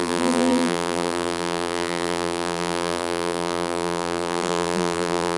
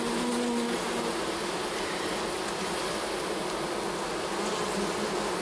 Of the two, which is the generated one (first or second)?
first